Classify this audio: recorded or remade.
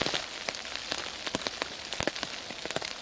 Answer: recorded